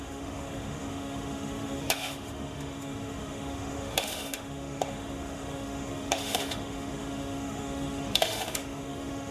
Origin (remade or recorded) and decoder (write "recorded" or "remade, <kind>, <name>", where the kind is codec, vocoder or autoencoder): remade, autoencoder, DAC-VAE